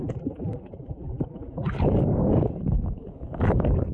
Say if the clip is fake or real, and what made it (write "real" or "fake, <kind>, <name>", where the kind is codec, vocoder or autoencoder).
fake, codec, DAC